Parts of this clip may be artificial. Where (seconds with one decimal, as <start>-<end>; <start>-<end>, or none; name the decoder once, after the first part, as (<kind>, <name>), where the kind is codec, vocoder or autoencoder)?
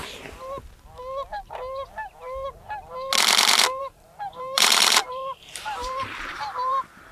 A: 3.8-7.1 (vocoder, BigVGAN v2)